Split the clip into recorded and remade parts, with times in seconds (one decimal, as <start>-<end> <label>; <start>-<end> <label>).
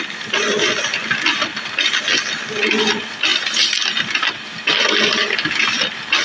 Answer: 0.0-6.2 recorded